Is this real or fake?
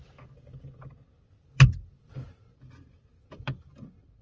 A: real